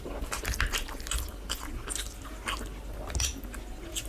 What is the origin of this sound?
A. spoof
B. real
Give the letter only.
B